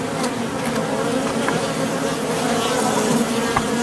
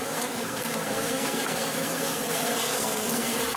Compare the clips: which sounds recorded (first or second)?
first